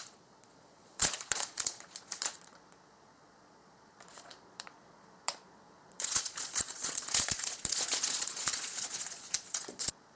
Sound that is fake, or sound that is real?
fake